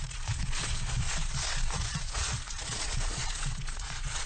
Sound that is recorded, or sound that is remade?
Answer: remade